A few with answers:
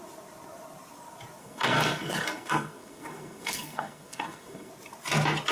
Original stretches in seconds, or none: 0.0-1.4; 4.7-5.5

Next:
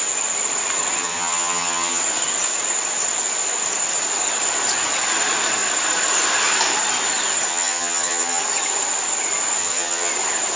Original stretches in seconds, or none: 0.0-1.0; 2.0-7.5; 8.4-9.6; 10.1-10.6

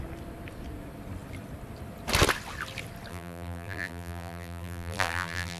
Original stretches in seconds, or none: 0.0-3.1

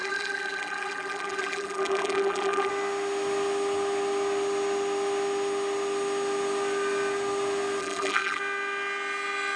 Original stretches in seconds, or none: 2.7-7.8; 8.4-9.6

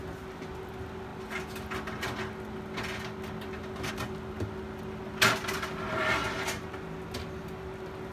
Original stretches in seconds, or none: 0.0-8.1

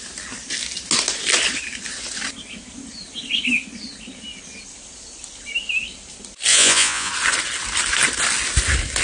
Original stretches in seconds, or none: 0.0-6.5; 7.1-9.0

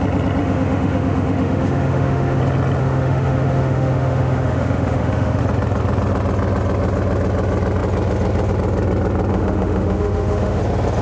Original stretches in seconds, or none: 0.0-0.4; 2.4-2.8; 5.4-9.3; 10.6-11.0

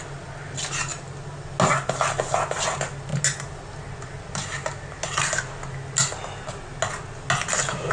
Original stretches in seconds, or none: 0.0-7.9